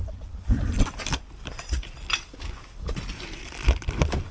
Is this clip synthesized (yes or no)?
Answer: yes